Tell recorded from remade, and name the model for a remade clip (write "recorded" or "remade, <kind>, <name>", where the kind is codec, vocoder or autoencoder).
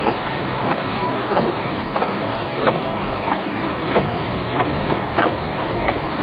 remade, codec, DAC